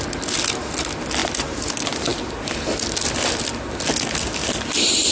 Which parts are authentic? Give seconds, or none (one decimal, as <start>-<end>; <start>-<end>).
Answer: 0.0-1.2; 1.7-5.1